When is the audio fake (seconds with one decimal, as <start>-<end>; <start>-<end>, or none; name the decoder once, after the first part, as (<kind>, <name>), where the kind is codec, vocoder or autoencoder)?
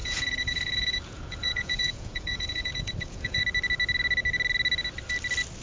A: 0.0-3.4 (vocoder, Vocos)